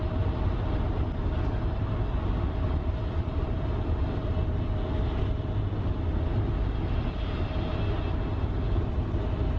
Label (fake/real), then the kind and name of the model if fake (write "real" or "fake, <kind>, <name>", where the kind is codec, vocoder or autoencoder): real